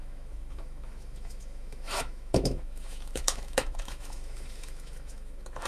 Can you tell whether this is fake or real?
fake